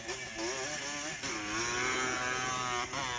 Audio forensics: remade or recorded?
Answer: recorded